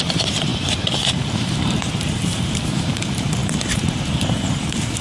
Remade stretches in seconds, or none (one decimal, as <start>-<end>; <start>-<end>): 0.0-5.0

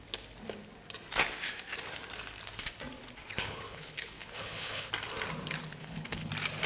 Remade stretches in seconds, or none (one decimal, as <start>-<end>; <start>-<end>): 3.4-4.9; 5.8-6.3